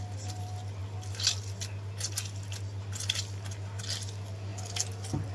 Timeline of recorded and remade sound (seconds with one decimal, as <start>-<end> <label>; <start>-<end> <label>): 0.0-5.3 recorded

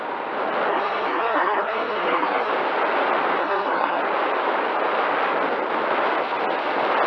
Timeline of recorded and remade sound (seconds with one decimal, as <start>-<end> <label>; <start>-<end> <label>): 0.0-0.7 recorded; 0.7-2.5 remade; 2.5-3.4 recorded; 3.4-4.0 remade; 4.0-7.1 recorded

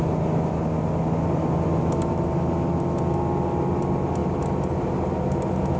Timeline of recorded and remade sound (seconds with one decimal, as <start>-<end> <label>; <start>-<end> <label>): 0.0-5.8 recorded

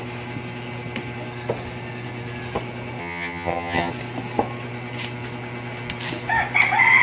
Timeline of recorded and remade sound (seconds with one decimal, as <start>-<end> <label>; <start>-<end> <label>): 0.0-3.0 recorded; 3.0-3.9 remade; 3.9-7.0 recorded

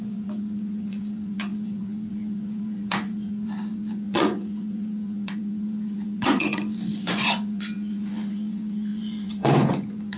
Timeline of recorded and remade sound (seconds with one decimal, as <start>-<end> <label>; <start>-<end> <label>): 0.0-10.2 remade

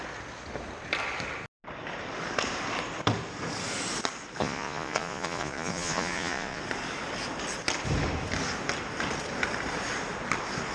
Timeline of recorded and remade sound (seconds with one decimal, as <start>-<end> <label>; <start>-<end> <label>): 0.0-4.4 recorded; 4.4-6.6 remade; 6.6-10.7 recorded

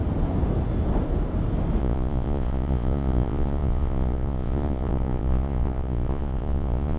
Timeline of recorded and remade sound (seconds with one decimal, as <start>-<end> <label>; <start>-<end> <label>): 0.0-1.8 recorded; 1.8-7.0 remade

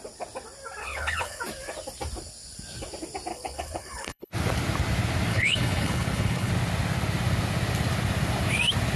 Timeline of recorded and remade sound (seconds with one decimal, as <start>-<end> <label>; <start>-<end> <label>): 0.0-0.8 recorded; 0.8-1.4 remade; 1.4-3.3 recorded; 3.3-4.3 remade; 4.3-5.3 recorded; 5.3-6.5 remade; 6.5-9.0 recorded